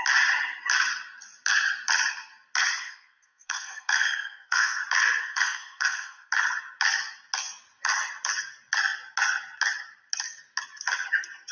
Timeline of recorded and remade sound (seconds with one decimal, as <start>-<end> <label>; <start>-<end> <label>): 0.0-2.8 recorded; 2.8-4.8 remade; 4.8-5.2 recorded; 5.2-6.3 remade; 6.3-11.5 recorded